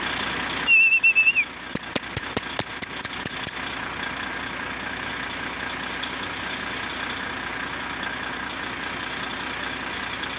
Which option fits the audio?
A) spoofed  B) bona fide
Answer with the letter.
B